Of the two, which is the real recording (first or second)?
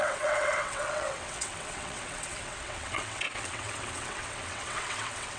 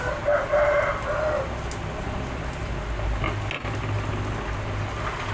second